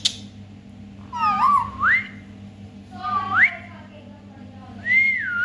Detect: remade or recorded recorded